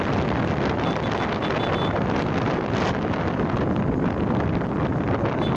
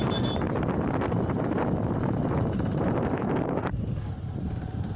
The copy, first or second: second